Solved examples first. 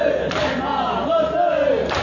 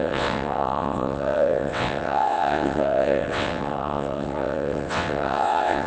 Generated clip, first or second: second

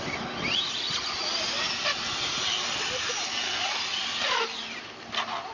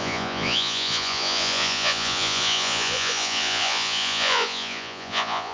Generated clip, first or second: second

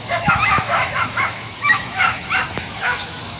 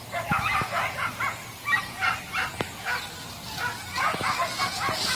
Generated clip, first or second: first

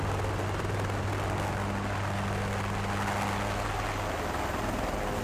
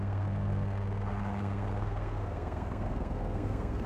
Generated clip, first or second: second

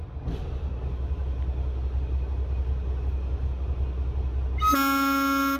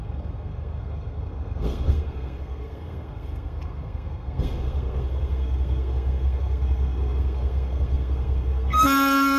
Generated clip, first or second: second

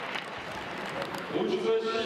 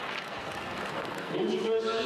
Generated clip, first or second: second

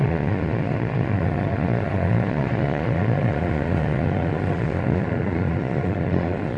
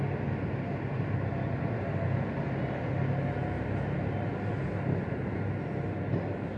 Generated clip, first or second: first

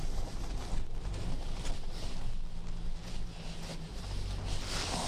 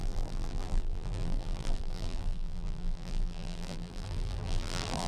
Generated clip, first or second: second